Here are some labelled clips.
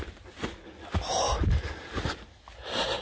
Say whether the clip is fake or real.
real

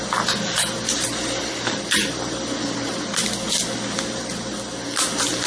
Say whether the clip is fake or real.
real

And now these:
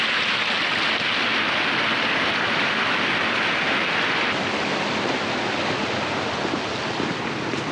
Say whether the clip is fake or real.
real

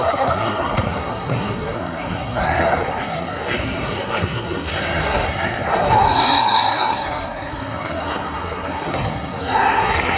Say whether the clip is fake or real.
fake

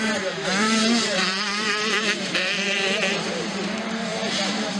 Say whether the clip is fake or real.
fake